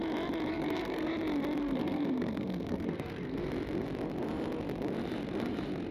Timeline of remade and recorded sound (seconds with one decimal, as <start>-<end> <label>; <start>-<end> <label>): 0.0-0.5 recorded; 0.5-1.1 remade; 1.1-1.6 recorded; 1.6-3.5 remade; 3.5-5.9 recorded